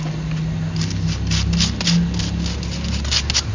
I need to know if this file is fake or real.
real